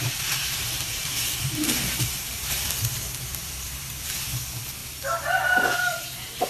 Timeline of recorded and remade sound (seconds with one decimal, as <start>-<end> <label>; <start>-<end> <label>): 0.0-3.9 remade; 3.9-4.8 recorded; 4.8-6.5 remade